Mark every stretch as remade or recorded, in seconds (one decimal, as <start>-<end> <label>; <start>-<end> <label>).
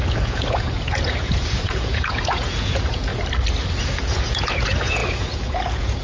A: 0.0-3.1 remade; 3.1-4.0 recorded; 4.0-6.0 remade